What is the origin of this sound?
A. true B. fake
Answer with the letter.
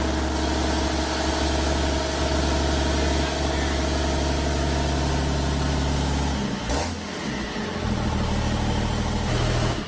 A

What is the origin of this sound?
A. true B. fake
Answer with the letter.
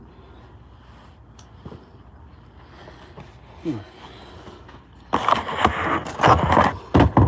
A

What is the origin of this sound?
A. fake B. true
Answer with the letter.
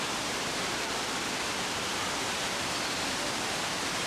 B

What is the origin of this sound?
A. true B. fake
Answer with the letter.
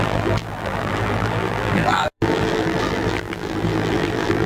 B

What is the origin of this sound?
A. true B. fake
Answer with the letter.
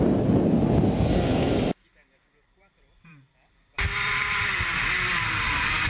B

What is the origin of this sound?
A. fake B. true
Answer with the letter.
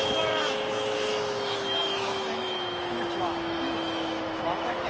A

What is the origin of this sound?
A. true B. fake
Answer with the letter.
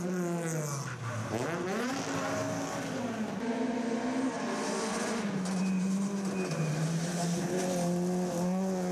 A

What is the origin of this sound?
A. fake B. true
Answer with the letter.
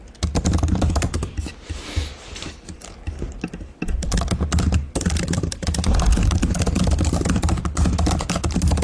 B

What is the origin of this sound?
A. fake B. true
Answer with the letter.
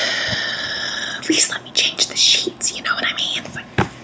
B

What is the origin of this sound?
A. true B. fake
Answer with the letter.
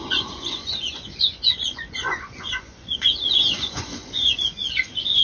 B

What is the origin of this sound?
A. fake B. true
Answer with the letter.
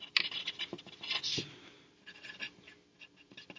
B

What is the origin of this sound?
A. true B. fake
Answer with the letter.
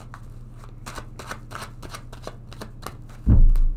A